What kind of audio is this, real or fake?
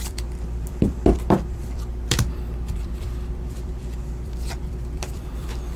fake